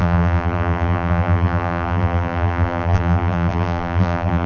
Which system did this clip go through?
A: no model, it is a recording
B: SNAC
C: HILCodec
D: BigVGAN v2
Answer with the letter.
D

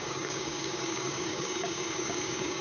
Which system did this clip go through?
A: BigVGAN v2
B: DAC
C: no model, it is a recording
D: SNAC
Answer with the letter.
B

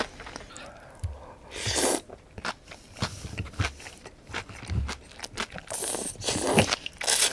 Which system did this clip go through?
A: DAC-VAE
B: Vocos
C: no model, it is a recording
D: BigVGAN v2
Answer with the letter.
C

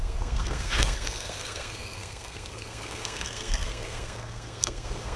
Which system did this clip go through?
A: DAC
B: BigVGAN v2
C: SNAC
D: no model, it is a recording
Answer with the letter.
C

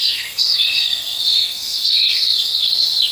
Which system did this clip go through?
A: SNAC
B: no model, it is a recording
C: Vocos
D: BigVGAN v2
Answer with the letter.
A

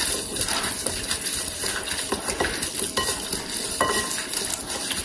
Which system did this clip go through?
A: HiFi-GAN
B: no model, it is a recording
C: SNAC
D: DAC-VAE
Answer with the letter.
B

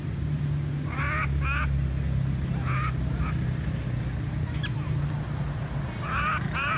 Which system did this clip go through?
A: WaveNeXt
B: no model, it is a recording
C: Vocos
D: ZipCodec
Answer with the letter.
B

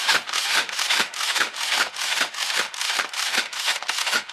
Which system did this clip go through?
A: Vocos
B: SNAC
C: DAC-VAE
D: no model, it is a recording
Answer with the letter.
C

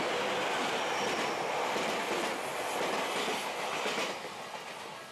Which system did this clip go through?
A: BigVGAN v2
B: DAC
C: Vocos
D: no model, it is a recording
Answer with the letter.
D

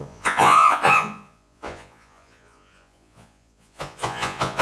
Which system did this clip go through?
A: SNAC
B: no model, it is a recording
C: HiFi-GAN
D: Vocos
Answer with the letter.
D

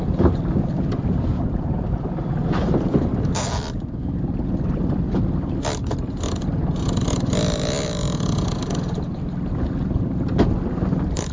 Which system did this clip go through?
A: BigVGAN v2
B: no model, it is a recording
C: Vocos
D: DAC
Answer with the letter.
B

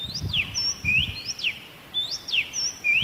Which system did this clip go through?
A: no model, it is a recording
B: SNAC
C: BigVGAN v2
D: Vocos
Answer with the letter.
C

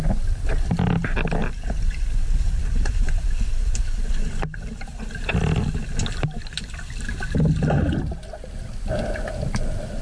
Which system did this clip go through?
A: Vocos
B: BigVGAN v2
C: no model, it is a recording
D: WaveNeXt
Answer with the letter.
C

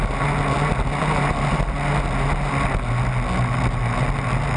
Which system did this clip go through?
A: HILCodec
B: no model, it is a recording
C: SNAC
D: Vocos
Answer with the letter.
B